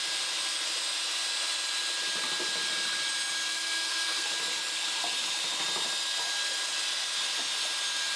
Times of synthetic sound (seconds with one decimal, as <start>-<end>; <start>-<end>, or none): 3.5-4.3